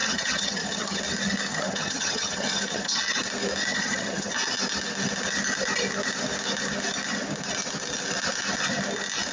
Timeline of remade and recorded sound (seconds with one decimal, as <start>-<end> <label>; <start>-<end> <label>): 0.0-1.0 remade; 1.0-1.5 recorded; 1.5-3.0 remade; 3.0-3.7 recorded; 3.7-4.3 remade; 4.3-9.3 recorded